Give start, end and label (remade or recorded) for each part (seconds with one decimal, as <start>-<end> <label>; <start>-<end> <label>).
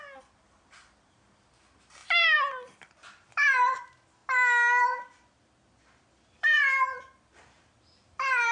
0.0-4.2 remade; 4.2-4.8 recorded; 4.8-8.5 remade